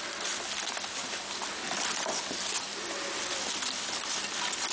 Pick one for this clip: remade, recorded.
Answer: recorded